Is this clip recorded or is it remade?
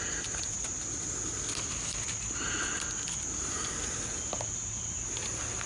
recorded